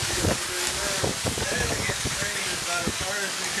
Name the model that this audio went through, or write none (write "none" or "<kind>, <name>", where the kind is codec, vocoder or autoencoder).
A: codec, DAC